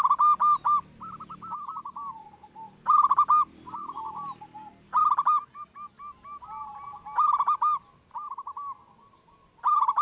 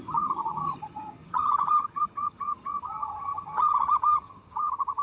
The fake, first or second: second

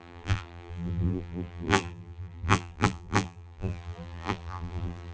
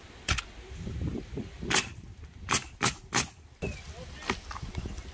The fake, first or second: first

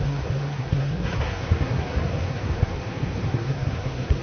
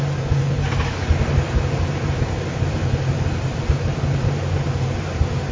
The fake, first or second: first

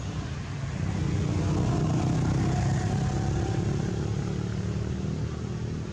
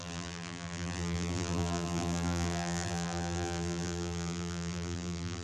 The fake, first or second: second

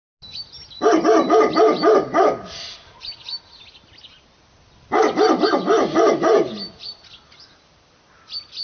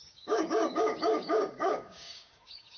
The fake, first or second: second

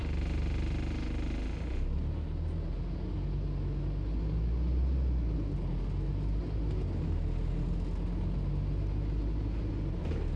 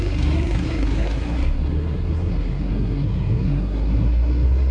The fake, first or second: second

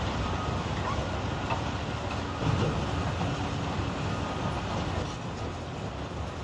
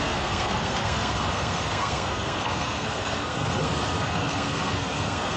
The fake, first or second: second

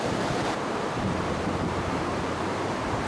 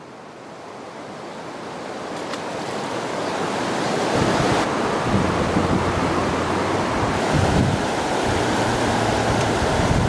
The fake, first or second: first